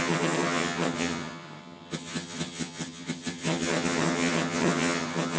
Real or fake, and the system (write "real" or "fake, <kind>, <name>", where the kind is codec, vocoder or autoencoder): fake, vocoder, HiFi-GAN